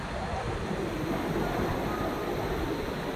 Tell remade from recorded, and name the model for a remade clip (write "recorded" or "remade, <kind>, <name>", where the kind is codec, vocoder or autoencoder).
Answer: recorded